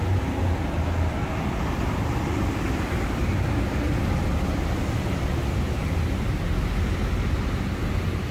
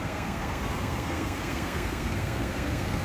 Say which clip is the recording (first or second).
first